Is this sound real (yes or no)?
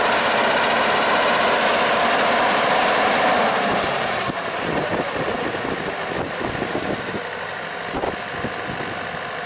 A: yes